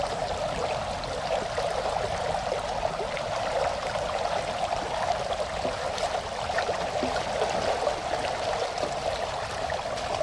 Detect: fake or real real